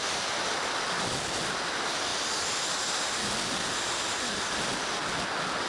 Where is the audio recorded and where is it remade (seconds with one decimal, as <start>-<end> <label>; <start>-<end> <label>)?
0.0-5.7 recorded

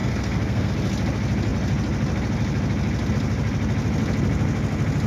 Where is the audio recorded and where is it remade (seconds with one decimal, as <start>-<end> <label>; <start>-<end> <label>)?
0.0-0.7 remade; 0.7-5.1 recorded

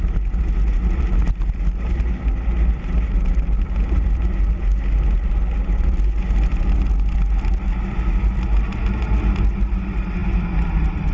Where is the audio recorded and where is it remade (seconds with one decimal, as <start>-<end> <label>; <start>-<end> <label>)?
0.0-11.1 recorded

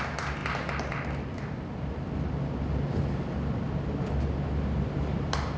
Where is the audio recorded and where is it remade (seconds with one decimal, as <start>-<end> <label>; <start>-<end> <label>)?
0.0-5.6 recorded

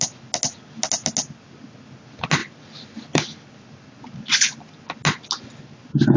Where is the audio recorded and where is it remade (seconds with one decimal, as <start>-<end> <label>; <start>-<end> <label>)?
0.0-6.2 recorded

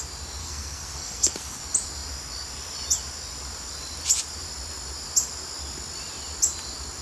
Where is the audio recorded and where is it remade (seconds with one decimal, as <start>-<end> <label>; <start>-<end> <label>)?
0.0-0.4 recorded; 0.4-1.6 remade; 1.6-7.0 recorded

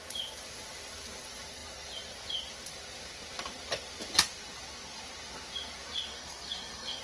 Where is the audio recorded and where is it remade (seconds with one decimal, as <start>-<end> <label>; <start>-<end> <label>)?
0.0-6.1 recorded; 6.1-7.0 remade